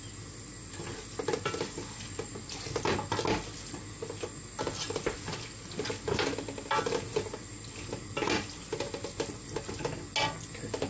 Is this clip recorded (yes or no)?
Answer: yes